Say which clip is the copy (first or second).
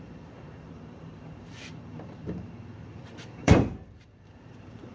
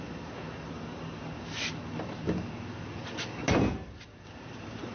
first